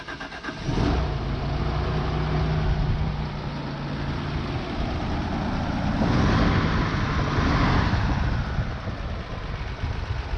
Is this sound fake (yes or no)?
no